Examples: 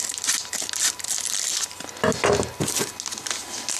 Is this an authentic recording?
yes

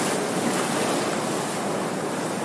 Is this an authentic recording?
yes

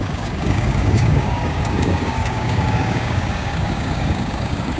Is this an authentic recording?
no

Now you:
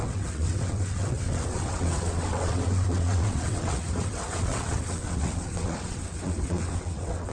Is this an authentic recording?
no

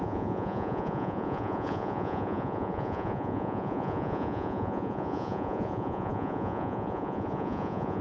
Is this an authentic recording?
no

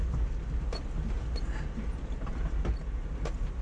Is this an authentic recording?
yes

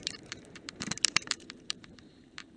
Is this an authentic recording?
no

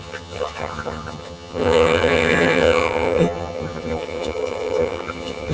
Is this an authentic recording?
no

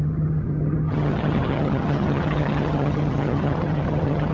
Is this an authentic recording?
no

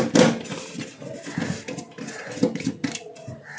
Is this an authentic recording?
yes